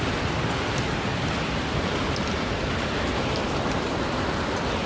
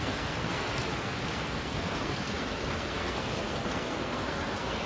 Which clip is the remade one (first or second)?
second